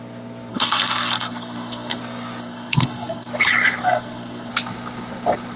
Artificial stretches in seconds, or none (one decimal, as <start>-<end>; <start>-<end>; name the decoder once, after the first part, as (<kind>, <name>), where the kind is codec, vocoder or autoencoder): 0.5-2.0 (codec, SNAC); 2.4-3.3; 3.8-4.5